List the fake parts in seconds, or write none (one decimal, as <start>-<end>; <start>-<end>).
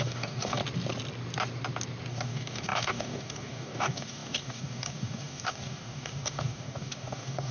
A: 0.0-0.6; 2.1-7.5